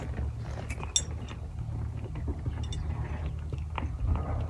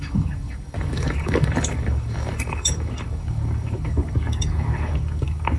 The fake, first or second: second